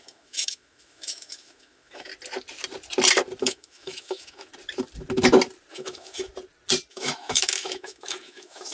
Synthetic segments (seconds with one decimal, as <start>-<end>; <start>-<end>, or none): 0.0-2.1; 3.4-4.5; 5.7-6.3; 6.9-8.7